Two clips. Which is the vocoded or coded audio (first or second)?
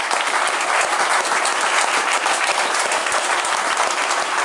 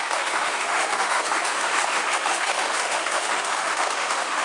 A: second